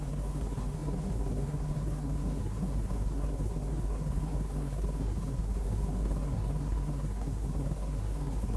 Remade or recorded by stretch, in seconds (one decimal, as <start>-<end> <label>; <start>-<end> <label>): 0.0-8.6 remade